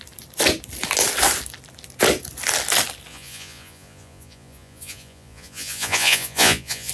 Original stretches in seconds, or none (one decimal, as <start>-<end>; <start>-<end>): 0.0-3.1